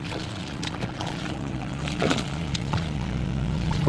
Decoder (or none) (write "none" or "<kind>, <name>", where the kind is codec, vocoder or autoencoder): vocoder, Vocos